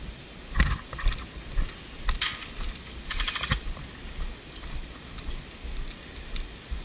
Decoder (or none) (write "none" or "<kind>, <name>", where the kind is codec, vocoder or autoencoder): none